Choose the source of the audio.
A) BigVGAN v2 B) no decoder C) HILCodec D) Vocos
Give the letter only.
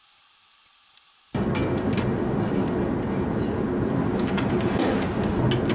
B